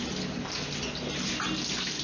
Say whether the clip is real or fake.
real